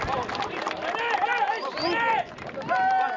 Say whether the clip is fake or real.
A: real